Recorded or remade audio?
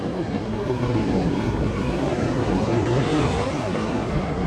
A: remade